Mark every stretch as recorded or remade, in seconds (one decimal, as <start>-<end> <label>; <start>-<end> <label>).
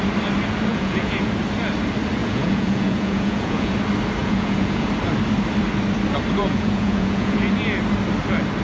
0.0-0.7 recorded; 0.7-1.3 remade; 1.3-2.2 recorded; 2.2-3.7 remade; 3.7-4.2 recorded; 4.2-4.9 remade; 4.9-6.4 recorded; 6.4-7.5 remade; 7.5-8.6 recorded